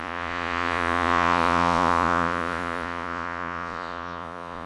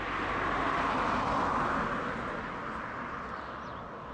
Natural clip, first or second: second